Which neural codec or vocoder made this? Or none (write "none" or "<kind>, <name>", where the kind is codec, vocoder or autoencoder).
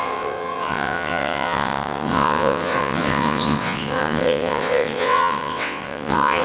vocoder, WaveNeXt